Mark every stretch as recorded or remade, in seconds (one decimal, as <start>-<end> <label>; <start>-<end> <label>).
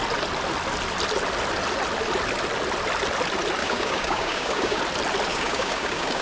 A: 0.0-3.6 recorded; 3.6-4.8 remade; 4.8-5.3 recorded; 5.3-6.2 remade